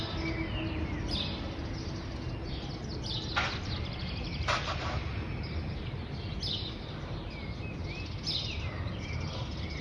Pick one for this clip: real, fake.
real